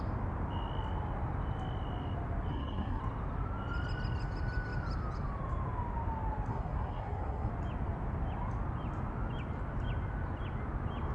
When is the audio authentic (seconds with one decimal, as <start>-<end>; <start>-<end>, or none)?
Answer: 0.0-2.5; 3.0-6.5; 7.5-11.1